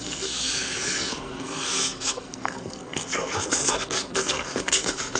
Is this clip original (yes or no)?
no